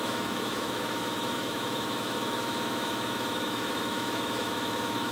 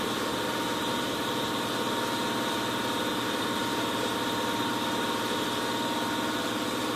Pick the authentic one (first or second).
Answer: second